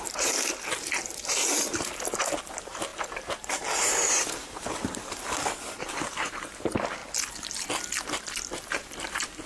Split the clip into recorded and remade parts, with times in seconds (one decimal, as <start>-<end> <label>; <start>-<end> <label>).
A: 0.0-1.2 remade; 1.2-2.2 recorded; 2.2-7.0 remade; 7.0-8.1 recorded; 8.1-9.5 remade